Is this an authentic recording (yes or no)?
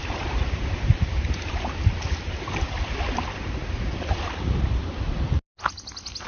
yes